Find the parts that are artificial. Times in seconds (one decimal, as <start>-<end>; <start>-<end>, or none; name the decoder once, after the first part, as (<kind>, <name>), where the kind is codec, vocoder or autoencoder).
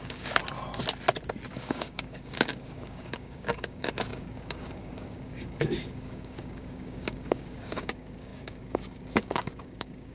0.0-0.4 (codec, DAC); 1.5-10.1